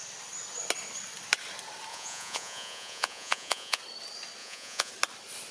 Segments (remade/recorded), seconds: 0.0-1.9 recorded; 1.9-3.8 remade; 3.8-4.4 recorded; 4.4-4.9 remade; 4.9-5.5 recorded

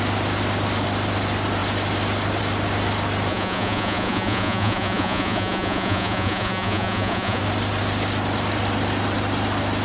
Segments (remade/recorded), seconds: 0.0-3.3 recorded; 3.3-7.4 remade; 7.4-9.8 recorded

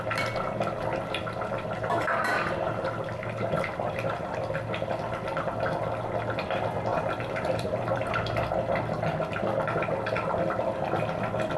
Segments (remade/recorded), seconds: 0.0-6.9 recorded; 6.9-8.1 remade; 8.1-11.6 recorded

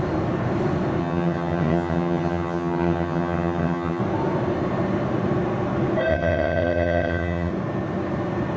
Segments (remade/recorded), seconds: 0.0-1.0 recorded; 1.0-4.0 remade; 4.0-6.1 recorded; 6.1-7.5 remade; 7.5-8.6 recorded

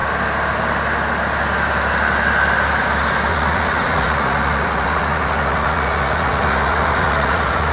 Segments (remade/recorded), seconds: 0.0-3.3 recorded; 3.3-7.7 remade